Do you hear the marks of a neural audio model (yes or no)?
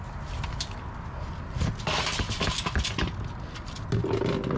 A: no